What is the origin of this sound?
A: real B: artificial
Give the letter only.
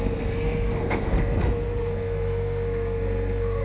B